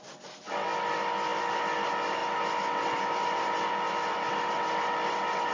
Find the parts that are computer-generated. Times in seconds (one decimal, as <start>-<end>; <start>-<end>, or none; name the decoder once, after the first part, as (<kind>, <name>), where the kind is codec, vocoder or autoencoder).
none